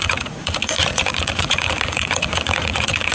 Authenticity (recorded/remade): remade